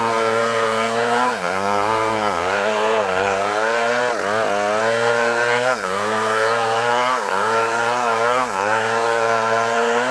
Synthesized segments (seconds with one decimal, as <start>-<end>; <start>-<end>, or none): 0.0-4.0; 4.8-10.1